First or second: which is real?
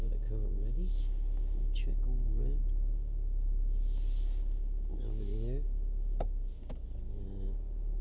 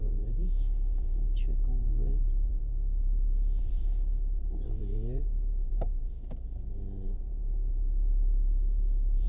first